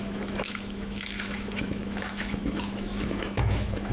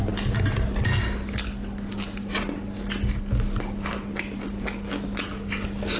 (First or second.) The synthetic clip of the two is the first